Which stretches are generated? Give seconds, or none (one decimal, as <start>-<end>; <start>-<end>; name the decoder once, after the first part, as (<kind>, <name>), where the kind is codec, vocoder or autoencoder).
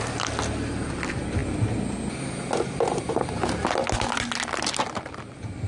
none